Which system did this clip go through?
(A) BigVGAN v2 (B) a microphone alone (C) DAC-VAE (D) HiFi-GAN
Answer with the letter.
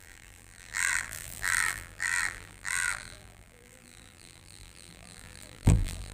A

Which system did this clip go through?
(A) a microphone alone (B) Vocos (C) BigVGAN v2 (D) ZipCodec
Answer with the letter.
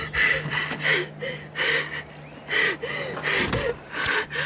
A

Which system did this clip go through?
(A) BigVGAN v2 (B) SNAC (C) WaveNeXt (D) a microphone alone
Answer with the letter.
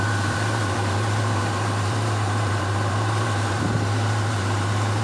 A